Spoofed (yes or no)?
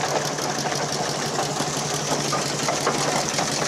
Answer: no